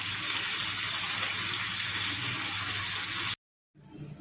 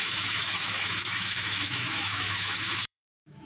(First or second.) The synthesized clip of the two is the second